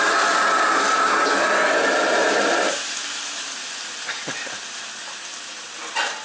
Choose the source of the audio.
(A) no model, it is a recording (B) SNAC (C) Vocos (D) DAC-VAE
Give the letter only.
A